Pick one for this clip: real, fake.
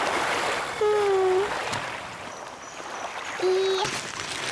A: real